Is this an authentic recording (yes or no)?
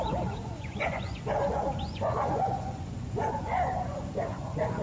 no